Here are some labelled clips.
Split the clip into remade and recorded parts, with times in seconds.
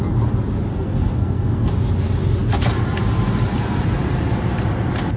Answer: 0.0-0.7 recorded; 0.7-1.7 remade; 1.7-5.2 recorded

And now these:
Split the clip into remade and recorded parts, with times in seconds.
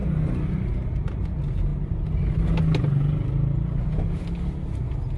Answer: 0.0-5.2 recorded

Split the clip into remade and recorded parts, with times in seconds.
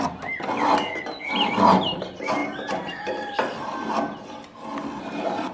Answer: 0.0-5.5 recorded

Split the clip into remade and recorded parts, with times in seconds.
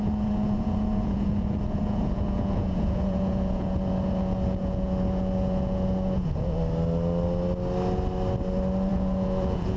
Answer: 0.0-6.6 remade; 6.6-8.9 recorded; 8.9-9.8 remade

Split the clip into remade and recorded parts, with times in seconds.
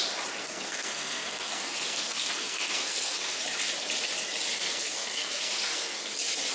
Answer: 0.0-0.4 recorded; 0.4-3.4 remade; 3.4-4.5 recorded; 4.5-6.0 remade; 6.0-6.5 recorded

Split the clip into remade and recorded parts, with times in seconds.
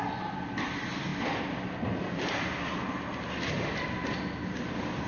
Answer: 0.0-5.1 recorded